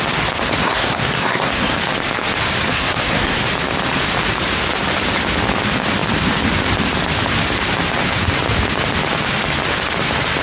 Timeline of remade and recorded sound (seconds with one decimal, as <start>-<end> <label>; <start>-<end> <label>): 0.0-0.6 recorded; 0.6-1.7 remade; 1.7-2.7 recorded; 2.7-3.4 remade; 3.4-10.4 recorded